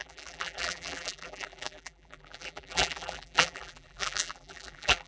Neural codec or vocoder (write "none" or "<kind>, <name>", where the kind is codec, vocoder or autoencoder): vocoder, BigVGAN v2